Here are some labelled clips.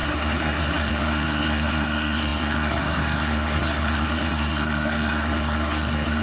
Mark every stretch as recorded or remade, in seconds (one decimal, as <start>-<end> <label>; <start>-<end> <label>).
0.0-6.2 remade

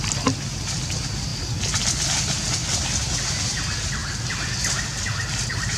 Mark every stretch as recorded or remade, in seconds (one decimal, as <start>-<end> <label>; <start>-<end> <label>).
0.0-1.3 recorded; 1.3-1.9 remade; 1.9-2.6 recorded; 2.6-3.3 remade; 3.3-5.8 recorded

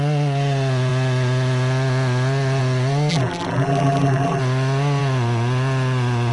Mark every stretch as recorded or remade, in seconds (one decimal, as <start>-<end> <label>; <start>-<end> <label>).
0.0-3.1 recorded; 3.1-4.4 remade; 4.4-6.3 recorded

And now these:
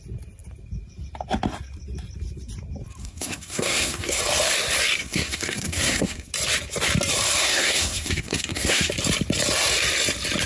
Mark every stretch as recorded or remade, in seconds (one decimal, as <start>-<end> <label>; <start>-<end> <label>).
0.0-3.0 recorded; 3.0-4.2 remade; 4.2-5.0 recorded; 5.0-6.3 remade; 6.3-7.4 recorded; 7.4-8.9 remade; 8.9-10.5 recorded

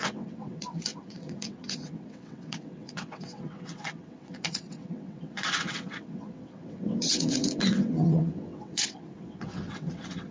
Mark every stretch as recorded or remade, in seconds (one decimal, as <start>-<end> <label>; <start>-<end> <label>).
0.0-10.3 remade

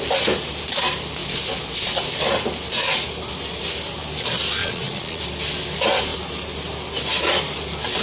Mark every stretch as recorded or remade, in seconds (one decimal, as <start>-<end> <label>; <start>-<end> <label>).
0.0-4.6 recorded; 4.6-5.2 remade; 5.2-8.0 recorded